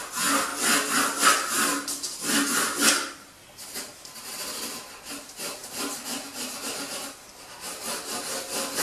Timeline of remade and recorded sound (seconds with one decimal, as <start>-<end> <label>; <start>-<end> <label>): 0.0-8.8 recorded